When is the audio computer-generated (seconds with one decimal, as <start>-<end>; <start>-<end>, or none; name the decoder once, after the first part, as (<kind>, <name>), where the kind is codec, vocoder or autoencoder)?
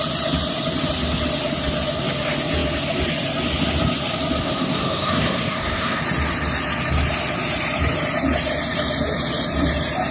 4.4-6.0 (codec, SNAC)